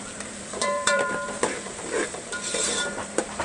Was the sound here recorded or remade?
remade